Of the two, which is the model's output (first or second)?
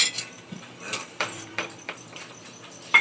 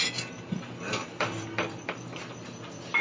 first